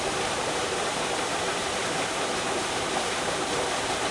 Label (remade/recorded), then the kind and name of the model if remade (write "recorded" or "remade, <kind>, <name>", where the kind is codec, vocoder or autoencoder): remade, vocoder, BigVGAN v2